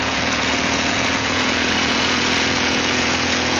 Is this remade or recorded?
remade